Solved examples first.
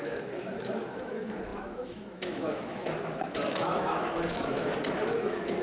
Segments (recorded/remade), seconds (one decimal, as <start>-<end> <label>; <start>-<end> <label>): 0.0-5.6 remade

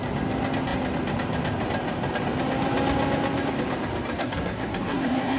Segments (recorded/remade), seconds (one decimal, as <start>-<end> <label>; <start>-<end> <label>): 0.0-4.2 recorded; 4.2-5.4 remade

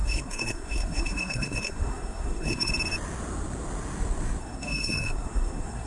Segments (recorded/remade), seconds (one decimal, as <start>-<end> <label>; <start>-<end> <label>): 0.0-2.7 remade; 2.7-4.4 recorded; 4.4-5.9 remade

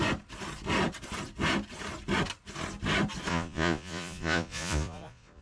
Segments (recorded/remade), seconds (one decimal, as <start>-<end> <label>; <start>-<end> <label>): 0.0-3.3 recorded; 3.3-5.4 remade

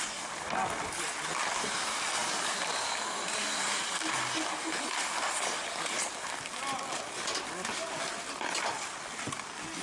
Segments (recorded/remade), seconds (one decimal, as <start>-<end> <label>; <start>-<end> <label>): 0.0-9.8 recorded

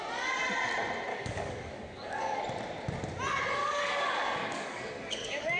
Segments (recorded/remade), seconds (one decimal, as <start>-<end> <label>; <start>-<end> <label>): 0.0-1.1 recorded; 1.1-2.4 remade; 2.4-3.6 recorded; 3.6-5.6 remade

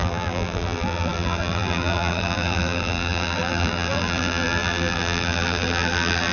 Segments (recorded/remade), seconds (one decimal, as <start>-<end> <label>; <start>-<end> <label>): 0.0-6.3 remade